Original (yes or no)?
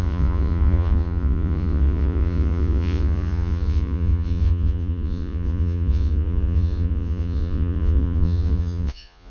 no